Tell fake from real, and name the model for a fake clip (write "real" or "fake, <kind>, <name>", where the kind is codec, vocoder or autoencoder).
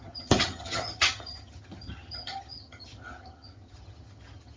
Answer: fake, vocoder, HiFi-GAN